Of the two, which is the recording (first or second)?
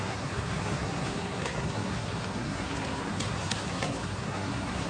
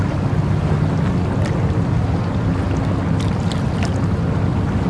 second